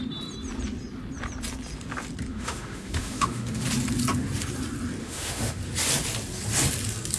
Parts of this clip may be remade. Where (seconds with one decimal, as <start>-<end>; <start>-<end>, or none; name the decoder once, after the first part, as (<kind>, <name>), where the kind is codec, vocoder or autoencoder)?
2.3-3.6 (autoencoder, DAC-VAE); 5.0-5.6